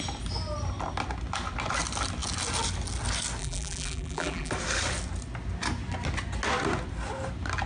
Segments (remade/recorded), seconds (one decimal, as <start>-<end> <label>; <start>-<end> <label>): 0.0-3.4 recorded; 3.4-4.5 remade; 4.5-7.7 recorded